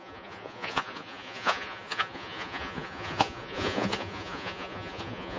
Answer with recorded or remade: remade